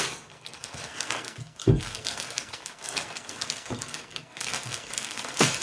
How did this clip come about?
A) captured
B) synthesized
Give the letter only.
B